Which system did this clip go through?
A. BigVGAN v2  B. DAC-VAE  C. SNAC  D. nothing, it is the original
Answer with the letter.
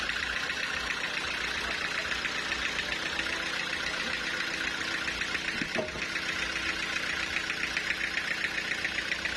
D